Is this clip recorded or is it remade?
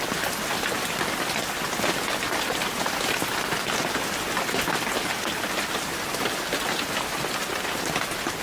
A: recorded